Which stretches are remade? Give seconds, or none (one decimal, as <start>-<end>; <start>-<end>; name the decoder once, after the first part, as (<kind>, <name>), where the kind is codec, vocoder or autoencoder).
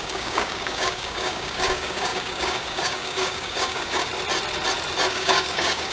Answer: 0.0-4.1 (codec, DAC); 5.1-5.9